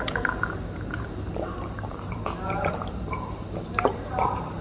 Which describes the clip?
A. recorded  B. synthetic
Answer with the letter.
B